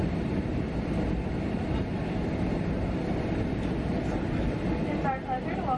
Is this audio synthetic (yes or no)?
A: no